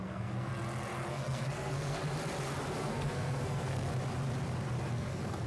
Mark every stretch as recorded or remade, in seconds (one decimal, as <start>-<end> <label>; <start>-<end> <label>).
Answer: 0.0-0.5 remade; 0.5-1.1 recorded; 1.1-2.0 remade; 2.0-2.8 recorded; 2.8-3.9 remade; 3.9-4.9 recorded; 4.9-5.5 remade

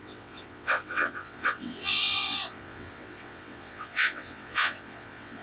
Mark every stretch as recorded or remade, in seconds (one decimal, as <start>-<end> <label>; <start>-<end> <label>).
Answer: 0.0-5.4 remade

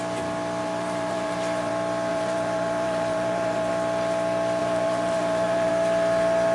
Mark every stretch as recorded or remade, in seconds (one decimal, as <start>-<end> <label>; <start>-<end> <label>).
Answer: 0.0-0.6 recorded; 0.6-1.7 remade; 1.7-2.1 recorded; 2.1-3.7 remade; 3.7-4.6 recorded; 4.6-5.7 remade; 5.7-6.5 recorded

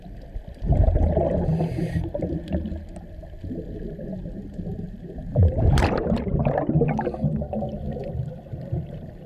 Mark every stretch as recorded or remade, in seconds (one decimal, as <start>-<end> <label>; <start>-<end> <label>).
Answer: 0.0-4.1 recorded; 4.1-5.7 remade; 5.7-9.3 recorded

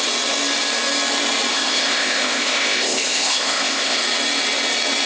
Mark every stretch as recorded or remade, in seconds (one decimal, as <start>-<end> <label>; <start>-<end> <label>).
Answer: 0.0-1.5 recorded; 1.5-4.0 remade; 4.0-5.1 recorded

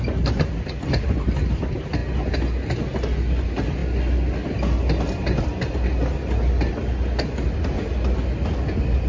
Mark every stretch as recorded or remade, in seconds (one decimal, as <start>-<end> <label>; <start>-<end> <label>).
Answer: 0.0-9.1 recorded

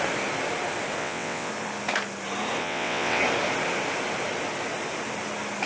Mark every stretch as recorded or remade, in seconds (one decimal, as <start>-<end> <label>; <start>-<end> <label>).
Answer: 0.0-1.0 recorded; 1.0-1.5 remade; 1.5-2.6 recorded; 2.6-3.2 remade; 3.2-5.7 recorded

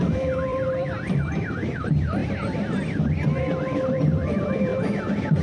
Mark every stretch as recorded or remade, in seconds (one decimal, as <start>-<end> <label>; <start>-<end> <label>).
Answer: 0.0-4.7 remade; 4.7-5.4 recorded